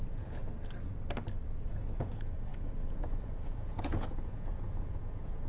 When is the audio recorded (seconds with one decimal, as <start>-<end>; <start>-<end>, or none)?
0.4-1.7